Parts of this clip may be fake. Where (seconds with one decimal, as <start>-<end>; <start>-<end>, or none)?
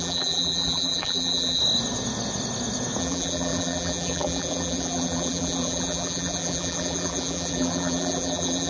0.0-1.6; 3.0-8.7